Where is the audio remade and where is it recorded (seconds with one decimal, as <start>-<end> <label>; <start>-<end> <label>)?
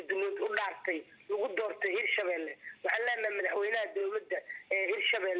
0.0-0.4 recorded; 0.4-1.1 remade; 1.1-2.5 recorded; 2.5-3.4 remade; 3.4-4.0 recorded; 4.0-4.7 remade; 4.7-5.4 recorded